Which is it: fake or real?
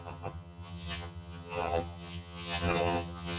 fake